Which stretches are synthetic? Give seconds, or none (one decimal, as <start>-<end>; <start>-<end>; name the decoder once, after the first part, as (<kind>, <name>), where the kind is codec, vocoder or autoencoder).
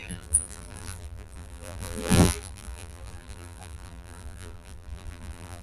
0.0-5.6 (vocoder, BigVGAN v2)